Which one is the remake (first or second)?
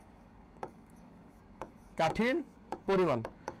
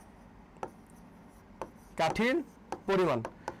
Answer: first